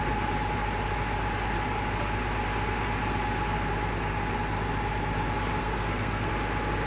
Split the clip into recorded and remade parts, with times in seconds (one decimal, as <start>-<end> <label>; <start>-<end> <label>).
0.0-5.6 recorded; 5.6-6.3 remade; 6.3-6.9 recorded

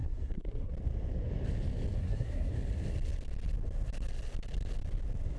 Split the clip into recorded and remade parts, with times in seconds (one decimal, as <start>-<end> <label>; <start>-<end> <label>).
0.0-0.7 remade; 0.7-2.0 recorded; 2.0-2.5 remade; 2.5-5.4 recorded

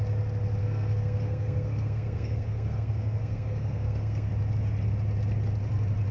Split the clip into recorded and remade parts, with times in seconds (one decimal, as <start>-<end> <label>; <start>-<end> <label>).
0.0-0.6 recorded; 0.6-4.3 remade; 4.3-6.1 recorded

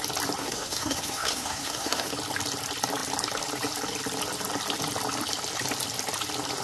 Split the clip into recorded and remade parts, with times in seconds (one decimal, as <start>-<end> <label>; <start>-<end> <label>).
0.0-0.4 recorded; 0.4-2.1 remade; 2.1-6.6 recorded

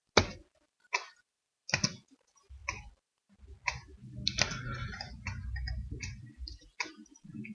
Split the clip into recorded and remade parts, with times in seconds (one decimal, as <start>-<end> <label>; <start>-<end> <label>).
0.0-7.5 recorded